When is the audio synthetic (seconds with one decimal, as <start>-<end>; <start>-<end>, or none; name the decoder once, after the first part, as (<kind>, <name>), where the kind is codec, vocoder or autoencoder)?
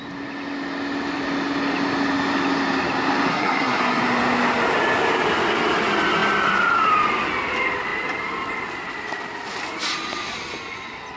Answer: 3.3-4.0 (codec, SNAC)